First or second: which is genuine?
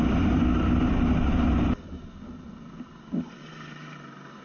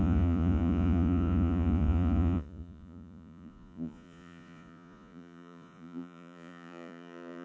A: first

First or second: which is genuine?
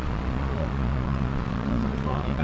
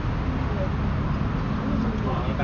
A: second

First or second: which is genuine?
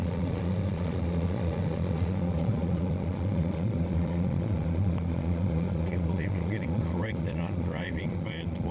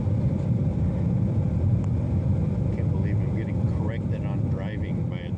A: second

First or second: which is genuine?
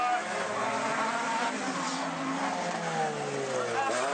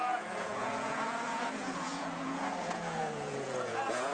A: first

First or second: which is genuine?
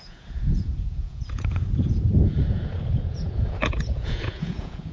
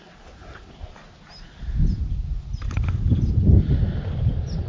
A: second